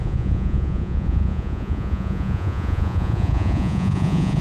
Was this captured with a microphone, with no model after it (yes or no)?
no